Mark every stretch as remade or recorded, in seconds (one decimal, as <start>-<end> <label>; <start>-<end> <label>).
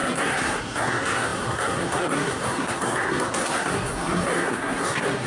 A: 0.0-5.3 remade